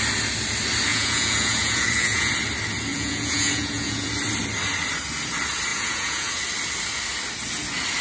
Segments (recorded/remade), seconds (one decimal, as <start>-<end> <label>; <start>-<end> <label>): 0.0-0.9 recorded; 0.9-2.3 remade; 2.3-2.9 recorded; 2.9-4.1 remade; 4.1-5.7 recorded; 5.7-6.4 remade; 6.4-8.0 recorded